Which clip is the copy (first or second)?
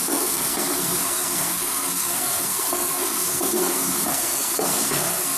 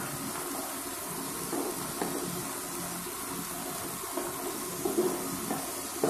first